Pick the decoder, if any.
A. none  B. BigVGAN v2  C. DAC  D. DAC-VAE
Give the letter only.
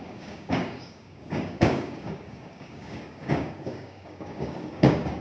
C